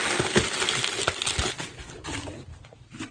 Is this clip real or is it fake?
real